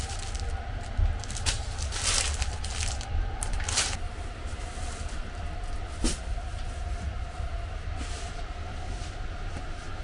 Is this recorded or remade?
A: recorded